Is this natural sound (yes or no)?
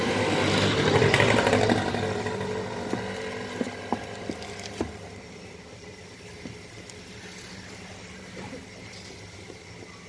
yes